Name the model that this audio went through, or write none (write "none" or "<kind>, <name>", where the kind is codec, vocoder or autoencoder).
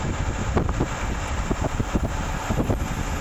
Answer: none